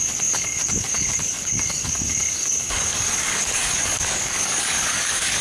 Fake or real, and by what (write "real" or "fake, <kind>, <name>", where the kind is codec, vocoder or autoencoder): fake, codec, DAC